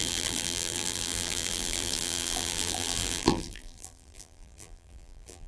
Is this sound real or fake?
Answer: fake